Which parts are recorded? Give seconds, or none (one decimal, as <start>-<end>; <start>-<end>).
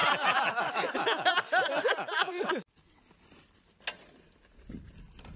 0.0-5.4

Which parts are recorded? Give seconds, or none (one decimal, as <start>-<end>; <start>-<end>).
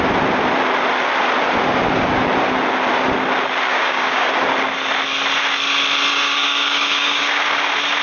0.0-3.7; 4.3-6.1; 7.4-8.0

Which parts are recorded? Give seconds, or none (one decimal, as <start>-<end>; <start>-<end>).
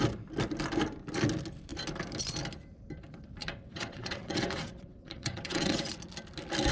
0.0-3.4; 5.9-6.7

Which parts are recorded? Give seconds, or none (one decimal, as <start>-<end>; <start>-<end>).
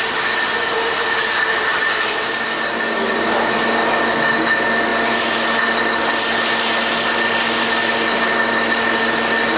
0.0-9.6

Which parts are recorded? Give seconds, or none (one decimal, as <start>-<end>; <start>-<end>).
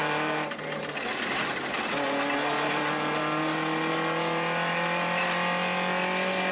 0.0-6.5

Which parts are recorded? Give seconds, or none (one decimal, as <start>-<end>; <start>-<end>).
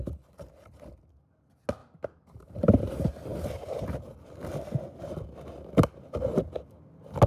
0.0-1.8; 2.9-7.3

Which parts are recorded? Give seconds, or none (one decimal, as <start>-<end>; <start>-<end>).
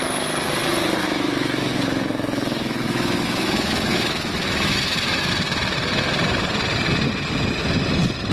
0.0-1.0; 5.3-8.3